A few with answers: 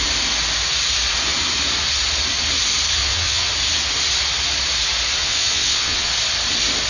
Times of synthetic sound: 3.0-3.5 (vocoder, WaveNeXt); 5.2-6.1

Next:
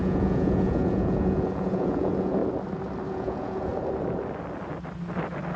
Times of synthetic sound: 0.0-2.4 (vocoder, Vocos); 3.1-3.7

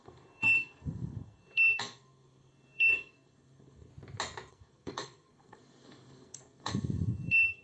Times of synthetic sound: 0.0-3.9 (codec, SNAC); 4.5-7.6

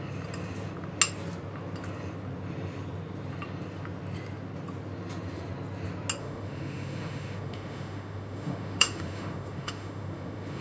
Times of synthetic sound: 6.2-10.6 (autoencoder, DAC-VAE)

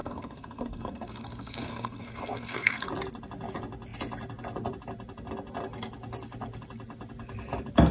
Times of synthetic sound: 0.0-2.9 (codec, SNAC)

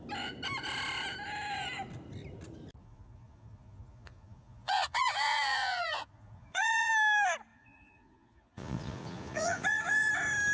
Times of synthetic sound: 2.8-6.9 (vocoder, Vocos); 7.5-10.1